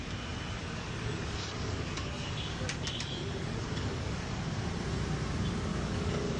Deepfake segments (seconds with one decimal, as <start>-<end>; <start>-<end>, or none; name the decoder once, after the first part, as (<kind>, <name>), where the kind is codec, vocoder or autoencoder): 0.6-4.4 (codec, DAC); 5.7-6.4